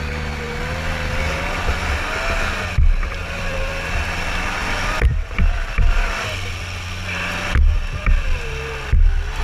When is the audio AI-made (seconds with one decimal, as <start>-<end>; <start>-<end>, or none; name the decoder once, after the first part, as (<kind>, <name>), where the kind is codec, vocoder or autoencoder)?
3.2-6.3 (vocoder, BigVGAN v2)